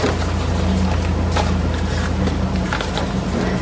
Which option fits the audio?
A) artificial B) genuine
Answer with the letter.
B